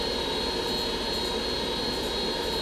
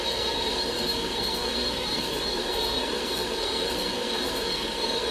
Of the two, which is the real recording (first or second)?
first